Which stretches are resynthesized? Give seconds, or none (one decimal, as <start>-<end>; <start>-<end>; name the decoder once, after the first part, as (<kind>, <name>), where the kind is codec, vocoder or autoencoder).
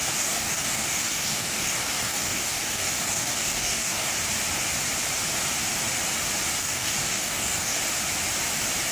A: 0.0-4.1 (codec, DAC); 6.6-7.8